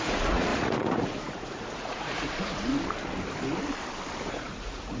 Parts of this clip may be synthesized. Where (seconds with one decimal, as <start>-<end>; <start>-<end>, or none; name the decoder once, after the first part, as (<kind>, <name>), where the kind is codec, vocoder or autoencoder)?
0.0-2.7 (vocoder, Vocos); 4.3-5.0